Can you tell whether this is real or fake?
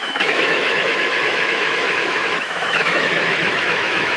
fake